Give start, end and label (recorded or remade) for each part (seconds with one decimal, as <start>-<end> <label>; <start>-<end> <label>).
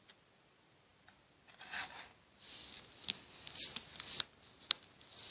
0.0-5.3 recorded